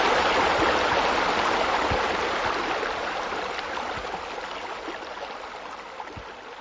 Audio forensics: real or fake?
real